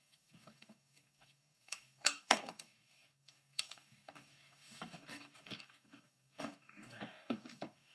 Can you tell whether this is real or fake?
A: fake